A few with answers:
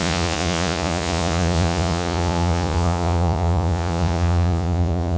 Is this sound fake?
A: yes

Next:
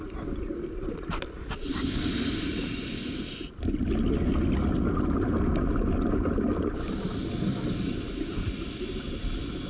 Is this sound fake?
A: no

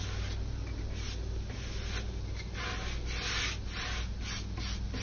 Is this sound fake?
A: no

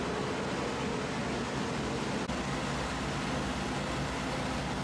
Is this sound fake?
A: no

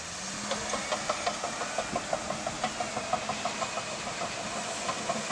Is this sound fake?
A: no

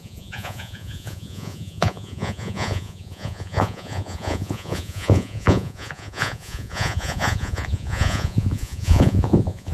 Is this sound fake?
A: yes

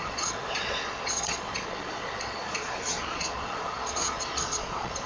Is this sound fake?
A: yes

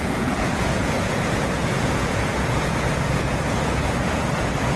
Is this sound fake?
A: yes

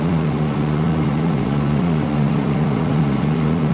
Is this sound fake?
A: yes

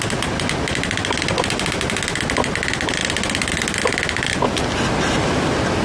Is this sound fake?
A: no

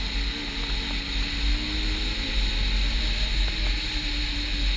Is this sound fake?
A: no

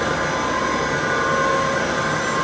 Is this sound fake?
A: no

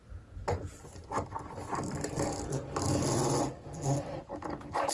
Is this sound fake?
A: no